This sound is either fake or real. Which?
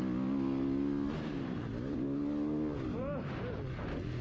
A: real